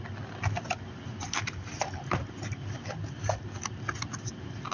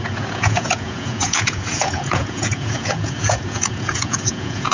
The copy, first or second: second